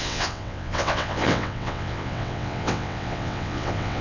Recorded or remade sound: remade